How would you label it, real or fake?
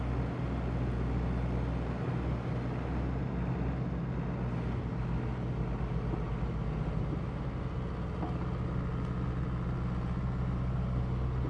real